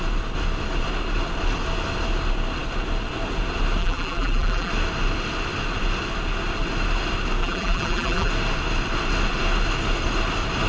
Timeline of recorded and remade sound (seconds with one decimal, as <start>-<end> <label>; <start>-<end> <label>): 0.0-3.8 recorded; 3.8-4.7 remade; 4.7-7.4 recorded; 7.4-8.3 remade; 8.3-10.7 recorded